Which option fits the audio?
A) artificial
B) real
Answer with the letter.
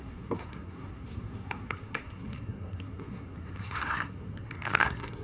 A